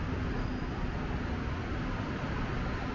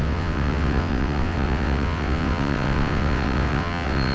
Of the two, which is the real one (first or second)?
first